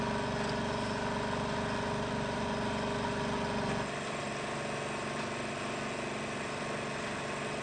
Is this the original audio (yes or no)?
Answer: yes